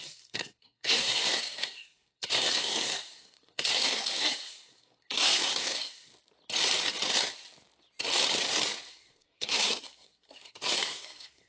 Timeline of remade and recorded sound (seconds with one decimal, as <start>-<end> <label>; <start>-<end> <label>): 0.0-6.1 remade; 6.1-8.9 recorded; 8.9-11.5 remade